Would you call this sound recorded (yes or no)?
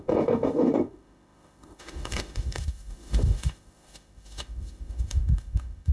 no